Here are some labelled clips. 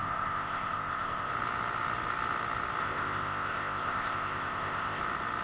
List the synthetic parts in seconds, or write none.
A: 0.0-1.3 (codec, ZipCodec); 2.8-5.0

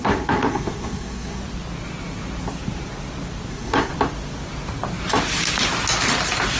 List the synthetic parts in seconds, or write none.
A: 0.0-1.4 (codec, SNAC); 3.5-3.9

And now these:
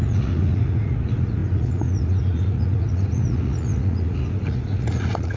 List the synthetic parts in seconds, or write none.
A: 0.0-5.4 (vocoder, Vocos)

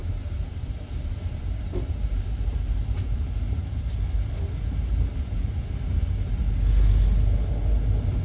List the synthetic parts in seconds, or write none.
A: 0.0-4.0 (vocoder, BigVGAN v2)